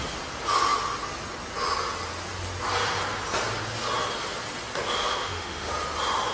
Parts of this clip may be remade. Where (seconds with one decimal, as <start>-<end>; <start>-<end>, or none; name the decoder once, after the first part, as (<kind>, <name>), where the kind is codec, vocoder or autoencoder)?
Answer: 5.0-5.7 (autoencoder, DAC-VAE)